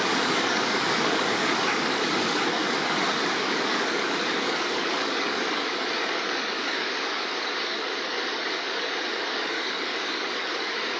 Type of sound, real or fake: fake